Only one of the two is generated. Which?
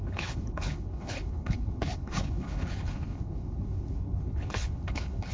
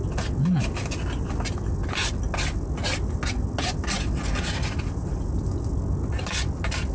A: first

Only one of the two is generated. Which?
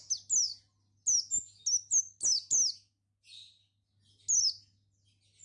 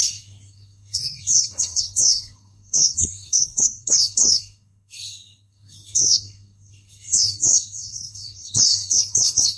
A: second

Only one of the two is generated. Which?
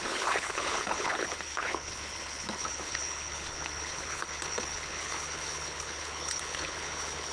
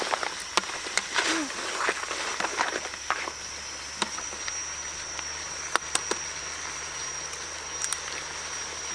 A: first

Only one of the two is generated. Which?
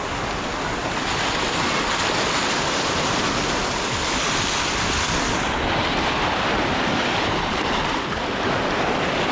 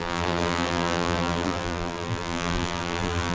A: second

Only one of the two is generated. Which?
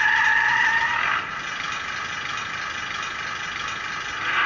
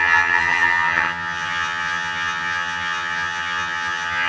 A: second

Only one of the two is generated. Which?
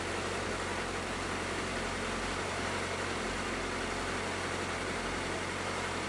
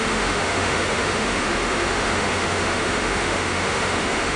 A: second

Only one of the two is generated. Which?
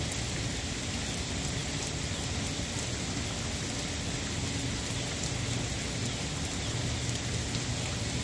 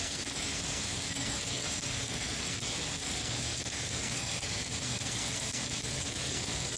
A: second